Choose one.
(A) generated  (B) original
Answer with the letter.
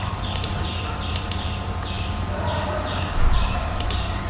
A